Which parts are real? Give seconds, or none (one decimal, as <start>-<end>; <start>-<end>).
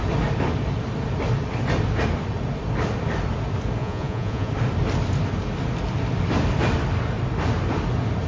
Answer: 0.0-3.8; 4.5-8.3